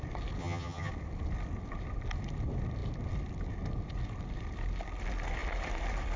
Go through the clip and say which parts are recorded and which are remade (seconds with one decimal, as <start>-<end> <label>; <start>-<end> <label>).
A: 0.0-0.4 recorded; 0.4-0.9 remade; 0.9-6.2 recorded